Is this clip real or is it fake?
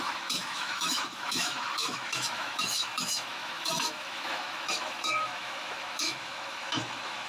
fake